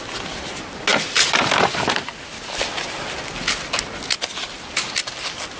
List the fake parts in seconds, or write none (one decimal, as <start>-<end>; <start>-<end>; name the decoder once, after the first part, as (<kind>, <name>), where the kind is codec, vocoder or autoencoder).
none